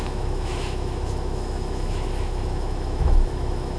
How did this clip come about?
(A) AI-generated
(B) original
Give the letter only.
A